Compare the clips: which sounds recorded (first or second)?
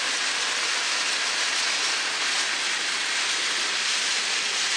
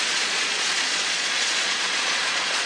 first